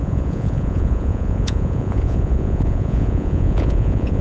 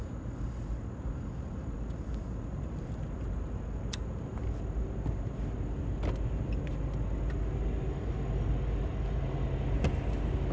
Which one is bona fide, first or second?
second